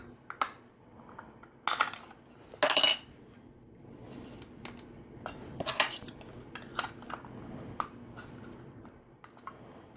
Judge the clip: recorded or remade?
recorded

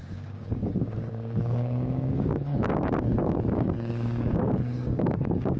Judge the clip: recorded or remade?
remade